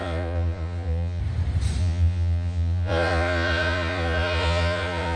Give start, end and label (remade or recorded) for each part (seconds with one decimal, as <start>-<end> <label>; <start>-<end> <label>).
0.0-1.2 remade; 1.2-1.8 recorded; 1.8-5.2 remade